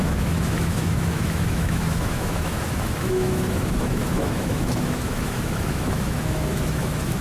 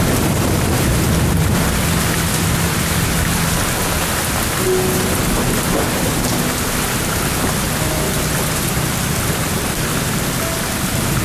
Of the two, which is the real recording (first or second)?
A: second